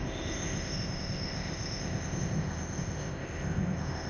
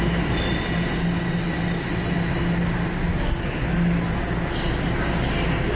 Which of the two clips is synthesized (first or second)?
first